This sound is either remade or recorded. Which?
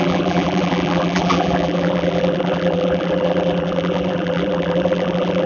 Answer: remade